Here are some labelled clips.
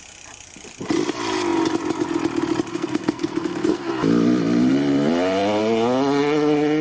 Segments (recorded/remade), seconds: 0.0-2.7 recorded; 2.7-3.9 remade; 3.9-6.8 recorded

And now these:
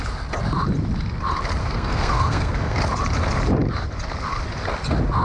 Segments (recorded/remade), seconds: 0.0-1.6 recorded; 1.6-2.8 remade; 2.8-5.2 recorded

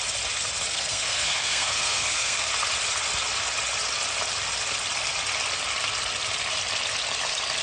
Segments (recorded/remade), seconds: 0.0-0.7 recorded; 0.7-2.5 remade; 2.5-7.6 recorded